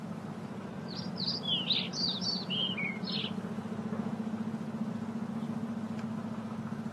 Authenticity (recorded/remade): recorded